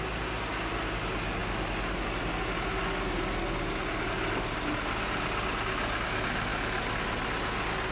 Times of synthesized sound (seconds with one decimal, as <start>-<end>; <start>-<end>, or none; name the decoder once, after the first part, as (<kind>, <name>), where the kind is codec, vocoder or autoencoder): none